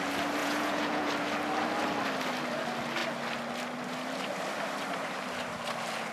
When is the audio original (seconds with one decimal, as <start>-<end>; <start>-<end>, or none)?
0.0-0.4; 1.1-6.1